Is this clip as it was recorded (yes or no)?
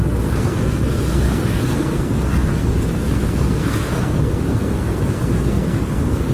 no